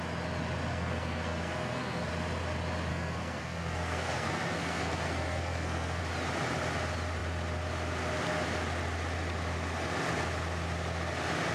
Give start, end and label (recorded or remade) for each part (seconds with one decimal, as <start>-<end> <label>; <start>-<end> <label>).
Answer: 0.0-0.7 recorded; 0.7-2.1 remade; 2.1-2.9 recorded; 2.9-6.0 remade; 6.0-11.5 recorded